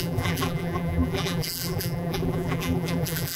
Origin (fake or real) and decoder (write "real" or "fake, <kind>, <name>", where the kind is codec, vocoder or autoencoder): fake, vocoder, BigVGAN v2